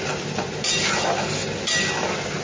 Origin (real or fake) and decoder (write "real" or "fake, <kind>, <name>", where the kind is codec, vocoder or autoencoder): real